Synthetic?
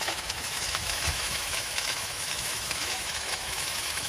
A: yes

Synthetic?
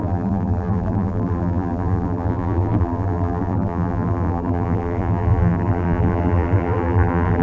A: yes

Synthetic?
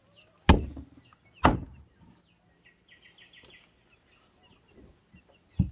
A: no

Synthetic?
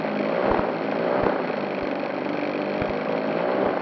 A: no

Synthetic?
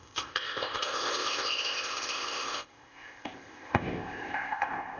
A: yes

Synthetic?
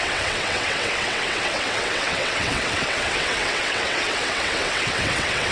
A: yes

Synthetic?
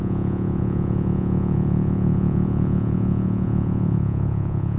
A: yes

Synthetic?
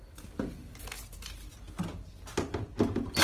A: no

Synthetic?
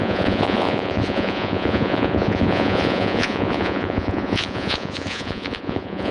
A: yes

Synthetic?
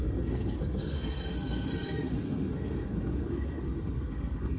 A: yes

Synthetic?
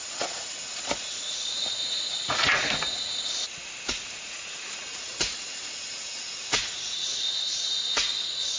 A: yes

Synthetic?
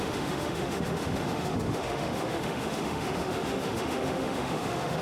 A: yes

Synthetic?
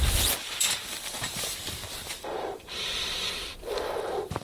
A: yes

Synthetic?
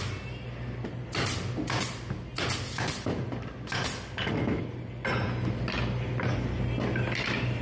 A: no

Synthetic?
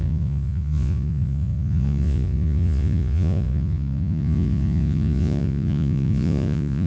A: yes